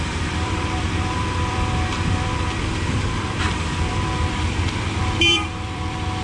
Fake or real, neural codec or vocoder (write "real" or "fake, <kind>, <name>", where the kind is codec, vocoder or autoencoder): fake, vocoder, BigVGAN v2